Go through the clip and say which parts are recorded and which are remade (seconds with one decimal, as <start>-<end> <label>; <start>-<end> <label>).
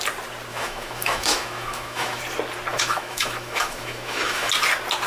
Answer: 0.0-0.5 recorded; 0.5-2.2 remade; 2.2-2.7 recorded; 2.7-4.5 remade; 4.5-5.1 recorded